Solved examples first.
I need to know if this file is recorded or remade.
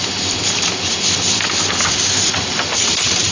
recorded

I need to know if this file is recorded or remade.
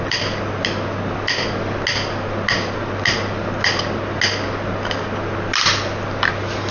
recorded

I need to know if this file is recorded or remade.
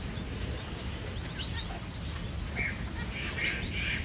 recorded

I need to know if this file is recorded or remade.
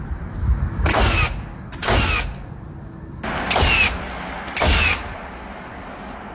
recorded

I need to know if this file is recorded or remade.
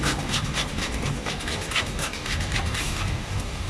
remade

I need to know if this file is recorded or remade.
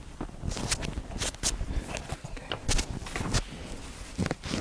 recorded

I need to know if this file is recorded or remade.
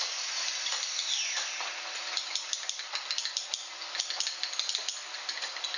recorded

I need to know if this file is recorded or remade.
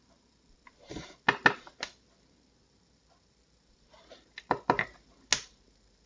recorded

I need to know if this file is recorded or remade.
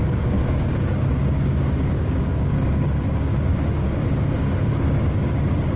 remade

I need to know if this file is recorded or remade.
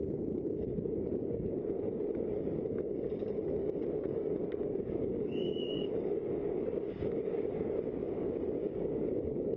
remade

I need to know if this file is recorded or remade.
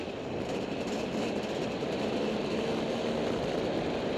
recorded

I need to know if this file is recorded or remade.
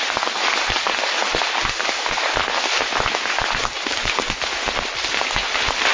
recorded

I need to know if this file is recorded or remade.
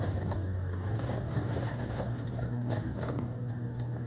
remade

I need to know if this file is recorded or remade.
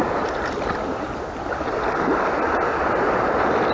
recorded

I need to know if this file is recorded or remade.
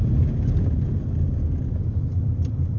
recorded